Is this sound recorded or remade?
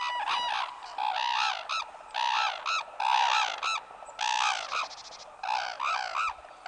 recorded